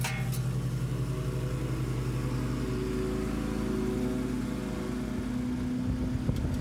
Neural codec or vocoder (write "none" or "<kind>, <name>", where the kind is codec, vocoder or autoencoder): none